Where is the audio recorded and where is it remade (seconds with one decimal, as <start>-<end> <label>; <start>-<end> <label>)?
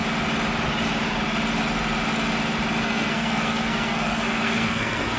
0.0-2.8 recorded; 2.8-5.2 remade